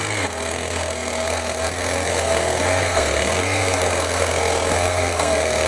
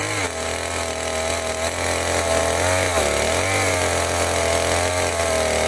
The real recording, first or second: second